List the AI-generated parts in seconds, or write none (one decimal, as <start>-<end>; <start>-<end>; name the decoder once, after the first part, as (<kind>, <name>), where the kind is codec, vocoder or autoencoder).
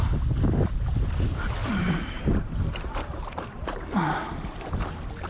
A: 1.6-4.8 (vocoder, BigVGAN v2)